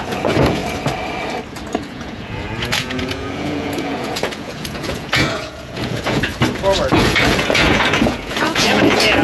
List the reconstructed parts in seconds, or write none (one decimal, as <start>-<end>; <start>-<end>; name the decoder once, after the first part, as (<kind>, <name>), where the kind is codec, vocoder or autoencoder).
0.0-0.6 (vocoder, Vocos); 1.8-6.3; 6.9-9.2